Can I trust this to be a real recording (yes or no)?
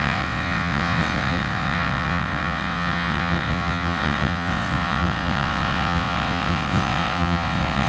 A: no